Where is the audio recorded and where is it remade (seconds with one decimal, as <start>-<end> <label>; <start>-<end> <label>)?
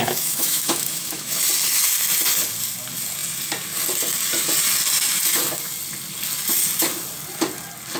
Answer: 0.0-1.4 remade; 1.4-8.0 recorded